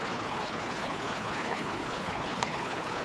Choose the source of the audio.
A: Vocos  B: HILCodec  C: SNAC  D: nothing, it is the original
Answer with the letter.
B